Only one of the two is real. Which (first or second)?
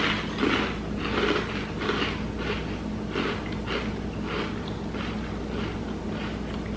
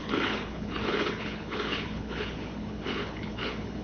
first